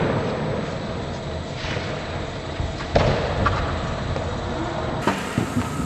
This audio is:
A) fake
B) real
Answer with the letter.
B